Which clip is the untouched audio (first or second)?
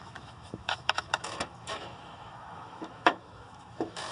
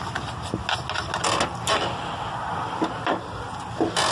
second